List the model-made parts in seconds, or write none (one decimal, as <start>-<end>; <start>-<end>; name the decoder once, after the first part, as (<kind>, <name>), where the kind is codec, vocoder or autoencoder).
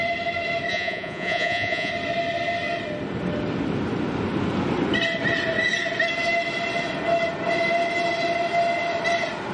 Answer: 0.7-1.9 (vocoder, Vocos)